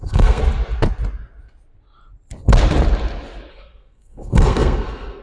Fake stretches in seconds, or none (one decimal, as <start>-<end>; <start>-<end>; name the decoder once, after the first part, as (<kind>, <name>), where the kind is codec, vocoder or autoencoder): 0.0-0.4 (codec, SNAC); 3.5-5.2